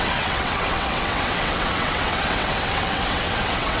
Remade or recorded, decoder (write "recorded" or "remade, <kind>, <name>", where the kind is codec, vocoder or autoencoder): remade, vocoder, WaveNeXt